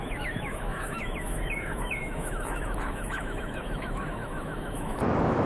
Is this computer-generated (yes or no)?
yes